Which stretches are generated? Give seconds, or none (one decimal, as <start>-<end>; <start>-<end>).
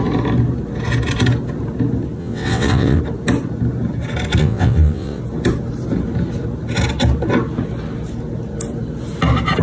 2.2-3.0; 4.4-5.2